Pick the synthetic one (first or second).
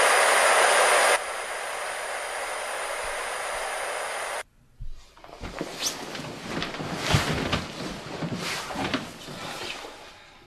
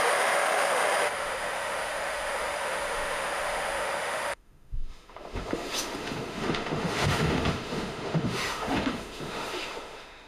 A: second